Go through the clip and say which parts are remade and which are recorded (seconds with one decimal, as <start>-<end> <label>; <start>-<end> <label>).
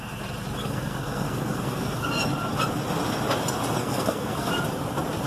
0.0-0.6 recorded; 0.6-2.1 remade; 2.1-3.8 recorded; 3.8-4.5 remade; 4.5-5.3 recorded